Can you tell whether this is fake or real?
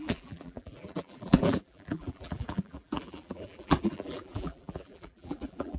fake